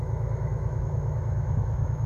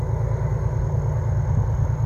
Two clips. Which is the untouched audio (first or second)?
second